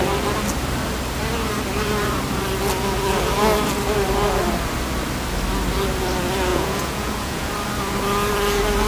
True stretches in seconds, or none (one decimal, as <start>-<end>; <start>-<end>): 0.0-6.5; 7.5-8.9